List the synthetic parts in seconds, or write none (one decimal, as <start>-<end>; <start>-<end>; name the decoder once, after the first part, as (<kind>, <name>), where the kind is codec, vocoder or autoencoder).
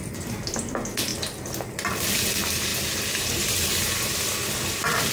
2.7-4.0 (vocoder, BigVGAN v2)